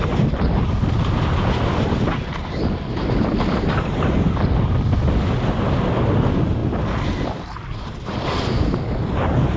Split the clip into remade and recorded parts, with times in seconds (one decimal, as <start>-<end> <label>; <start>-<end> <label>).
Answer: 0.0-9.6 recorded